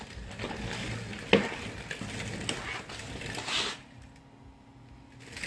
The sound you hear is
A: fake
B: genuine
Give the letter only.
B